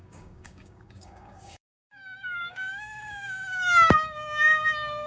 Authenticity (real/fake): fake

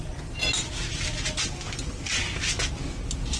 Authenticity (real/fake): real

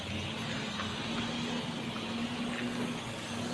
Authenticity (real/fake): real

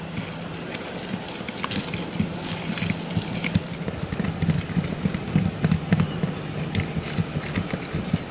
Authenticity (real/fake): real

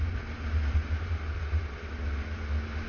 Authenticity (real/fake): real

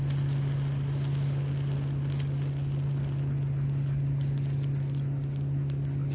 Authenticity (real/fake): real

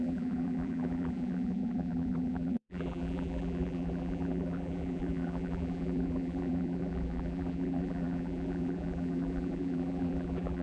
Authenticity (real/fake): fake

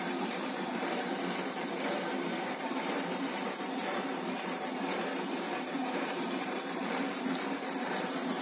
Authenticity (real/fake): fake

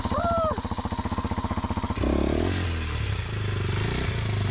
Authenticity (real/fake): real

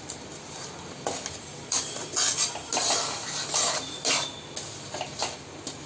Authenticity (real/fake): real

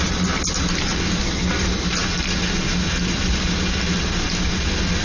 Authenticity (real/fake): real